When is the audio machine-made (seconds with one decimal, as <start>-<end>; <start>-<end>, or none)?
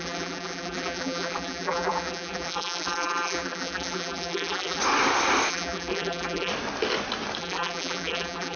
0.0-4.8; 5.5-6.5; 7.4-8.6